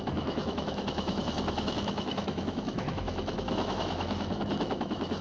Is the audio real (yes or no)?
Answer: no